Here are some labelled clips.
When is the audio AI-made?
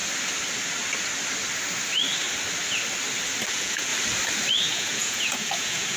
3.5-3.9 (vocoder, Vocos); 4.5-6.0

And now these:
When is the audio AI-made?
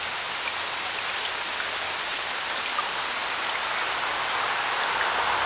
none